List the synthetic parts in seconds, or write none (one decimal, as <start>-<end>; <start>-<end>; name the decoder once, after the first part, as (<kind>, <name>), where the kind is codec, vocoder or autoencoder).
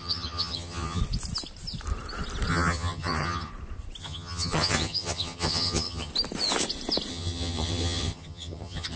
0.0-1.0 (vocoder, HiFi-GAN); 2.5-3.5; 4.0-6.1; 7.1-9.0